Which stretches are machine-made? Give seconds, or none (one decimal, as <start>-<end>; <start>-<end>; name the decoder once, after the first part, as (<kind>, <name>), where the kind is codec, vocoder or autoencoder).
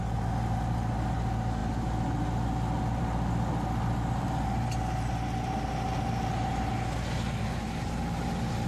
none